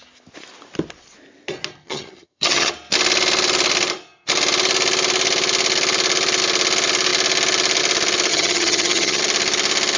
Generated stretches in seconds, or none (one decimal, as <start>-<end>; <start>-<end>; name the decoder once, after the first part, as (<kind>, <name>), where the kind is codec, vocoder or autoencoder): 1.8-2.7 (vocoder, HiFi-GAN); 8.3-9.2